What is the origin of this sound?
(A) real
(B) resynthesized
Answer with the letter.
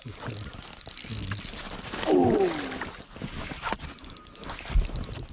A